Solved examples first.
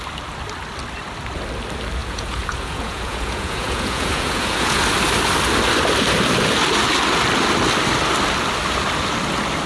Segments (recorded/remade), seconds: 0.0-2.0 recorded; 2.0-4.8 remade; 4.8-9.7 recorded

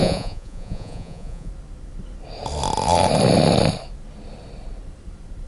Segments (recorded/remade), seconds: 0.0-1.5 remade; 1.5-5.5 recorded

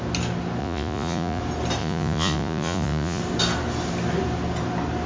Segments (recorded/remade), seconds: 0.0-0.6 recorded; 0.6-1.4 remade; 1.4-1.8 recorded; 1.8-3.2 remade; 3.2-5.1 recorded

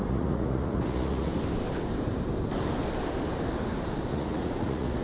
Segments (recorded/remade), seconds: 0.0-1.3 remade; 1.3-4.1 recorded; 4.1-5.0 remade